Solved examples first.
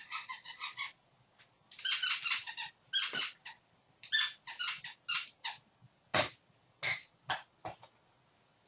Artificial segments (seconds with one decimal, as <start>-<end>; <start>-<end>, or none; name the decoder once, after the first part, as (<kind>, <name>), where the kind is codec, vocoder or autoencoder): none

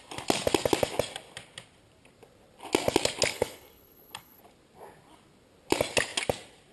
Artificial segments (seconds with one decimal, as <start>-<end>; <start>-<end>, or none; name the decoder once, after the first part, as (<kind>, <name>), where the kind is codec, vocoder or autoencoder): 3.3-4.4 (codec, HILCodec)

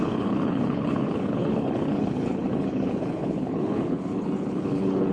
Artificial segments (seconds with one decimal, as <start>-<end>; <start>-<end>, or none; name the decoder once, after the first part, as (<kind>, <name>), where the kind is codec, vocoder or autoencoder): 0.0-5.1 (codec, HILCodec)